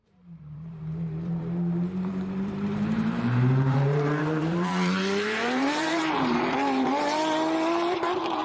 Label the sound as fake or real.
fake